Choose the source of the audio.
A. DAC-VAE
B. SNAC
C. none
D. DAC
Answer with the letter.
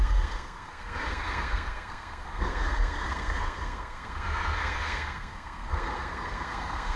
B